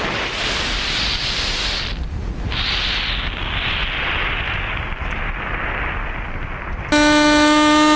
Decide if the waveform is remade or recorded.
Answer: recorded